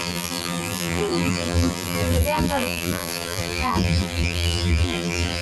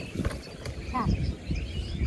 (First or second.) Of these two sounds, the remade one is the first